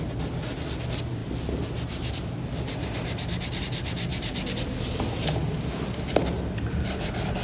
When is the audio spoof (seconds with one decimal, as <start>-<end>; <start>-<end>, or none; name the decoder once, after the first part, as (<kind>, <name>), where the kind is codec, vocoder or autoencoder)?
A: none